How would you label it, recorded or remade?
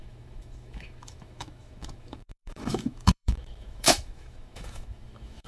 remade